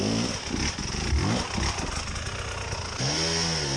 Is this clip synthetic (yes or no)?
no